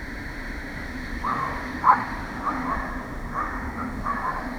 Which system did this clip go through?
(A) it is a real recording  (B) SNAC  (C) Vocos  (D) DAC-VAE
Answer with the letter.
D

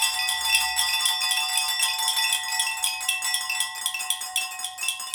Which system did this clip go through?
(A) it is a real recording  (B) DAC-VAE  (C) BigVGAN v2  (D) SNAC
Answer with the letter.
A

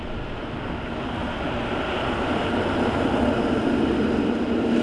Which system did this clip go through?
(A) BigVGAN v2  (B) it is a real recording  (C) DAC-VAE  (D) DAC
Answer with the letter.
B